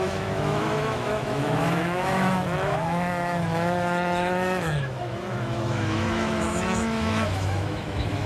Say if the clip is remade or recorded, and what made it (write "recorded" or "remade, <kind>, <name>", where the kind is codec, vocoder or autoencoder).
remade, autoencoder, DAC-VAE